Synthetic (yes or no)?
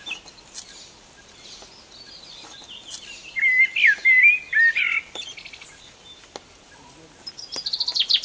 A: no